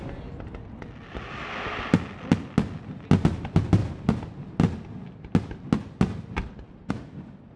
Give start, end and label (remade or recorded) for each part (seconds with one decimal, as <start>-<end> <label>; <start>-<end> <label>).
0.0-7.6 recorded